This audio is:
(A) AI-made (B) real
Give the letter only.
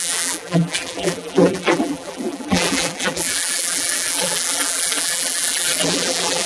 A